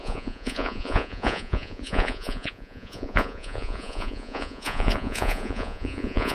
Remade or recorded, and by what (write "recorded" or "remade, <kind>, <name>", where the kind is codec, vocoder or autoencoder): remade, vocoder, Vocos